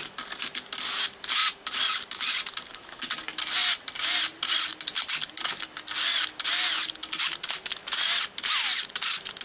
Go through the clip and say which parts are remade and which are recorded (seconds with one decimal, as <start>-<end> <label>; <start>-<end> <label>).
0.0-9.4 recorded